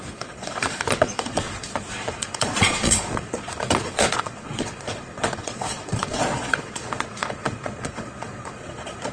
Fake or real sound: fake